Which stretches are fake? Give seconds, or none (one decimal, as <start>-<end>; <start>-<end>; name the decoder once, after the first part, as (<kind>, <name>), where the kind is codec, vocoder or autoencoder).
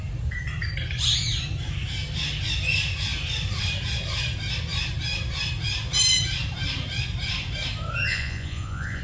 8.1-9.0 (vocoder, Vocos)